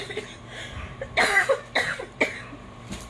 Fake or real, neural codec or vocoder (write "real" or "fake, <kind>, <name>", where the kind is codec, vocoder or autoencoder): fake, vocoder, BigVGAN v2